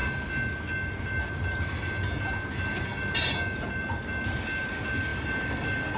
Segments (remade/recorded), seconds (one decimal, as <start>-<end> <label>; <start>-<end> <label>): 0.0-6.0 recorded